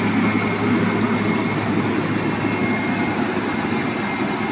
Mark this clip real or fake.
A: real